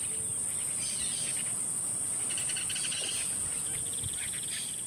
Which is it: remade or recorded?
recorded